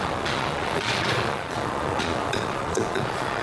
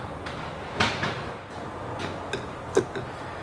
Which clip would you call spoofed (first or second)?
first